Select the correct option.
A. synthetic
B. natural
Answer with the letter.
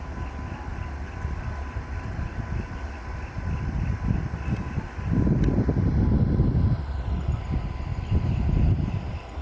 B